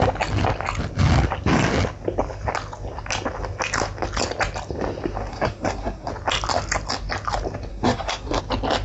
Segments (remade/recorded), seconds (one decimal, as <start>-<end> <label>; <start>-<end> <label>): 0.0-5.3 recorded; 5.3-6.1 remade; 6.1-7.7 recorded; 7.7-8.4 remade; 8.4-8.8 recorded